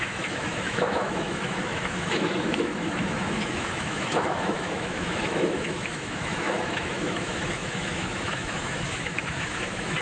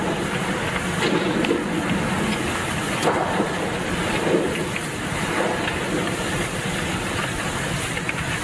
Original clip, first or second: second